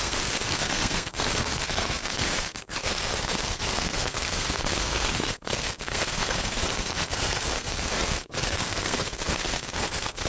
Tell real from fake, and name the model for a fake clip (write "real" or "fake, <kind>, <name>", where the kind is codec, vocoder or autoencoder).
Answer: fake, codec, SNAC